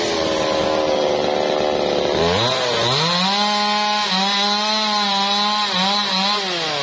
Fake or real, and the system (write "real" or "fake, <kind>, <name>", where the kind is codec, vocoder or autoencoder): real